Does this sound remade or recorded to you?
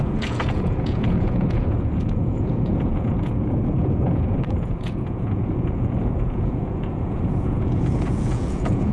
remade